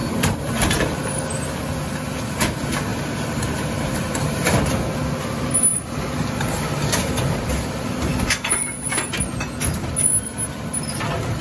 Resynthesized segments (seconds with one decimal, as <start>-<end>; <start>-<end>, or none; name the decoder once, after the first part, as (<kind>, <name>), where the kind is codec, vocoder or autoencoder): 0.0-1.0 (vocoder, BigVGAN v2); 2.9-4.6; 8.1-9.0